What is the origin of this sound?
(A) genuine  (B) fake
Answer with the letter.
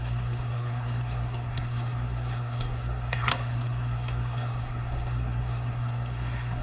B